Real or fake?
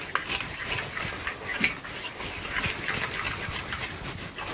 real